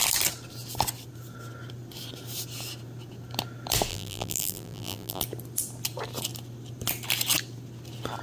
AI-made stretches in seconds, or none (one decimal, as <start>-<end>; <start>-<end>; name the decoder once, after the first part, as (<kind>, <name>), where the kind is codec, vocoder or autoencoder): 3.9-5.2 (vocoder, BigVGAN v2)